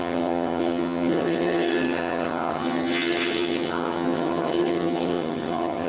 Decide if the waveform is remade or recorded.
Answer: remade